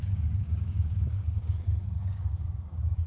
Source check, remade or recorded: remade